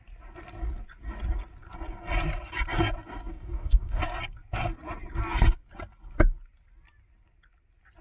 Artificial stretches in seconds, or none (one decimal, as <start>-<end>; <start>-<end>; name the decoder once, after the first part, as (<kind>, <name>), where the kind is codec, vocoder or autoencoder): 3.3-4.0 (codec, DAC)